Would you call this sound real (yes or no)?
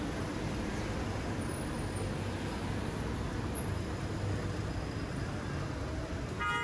yes